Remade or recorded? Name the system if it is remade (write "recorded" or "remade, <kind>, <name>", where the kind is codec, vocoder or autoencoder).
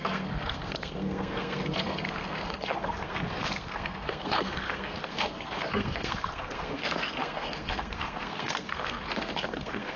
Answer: remade, codec, SNAC